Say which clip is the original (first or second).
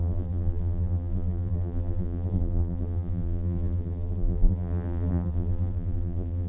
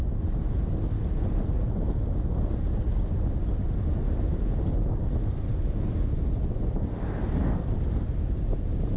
second